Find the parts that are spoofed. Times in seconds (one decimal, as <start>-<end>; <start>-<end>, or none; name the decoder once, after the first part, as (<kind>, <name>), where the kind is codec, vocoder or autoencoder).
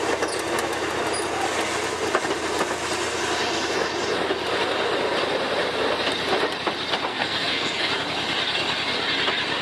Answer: 7.1-7.9 (codec, SNAC)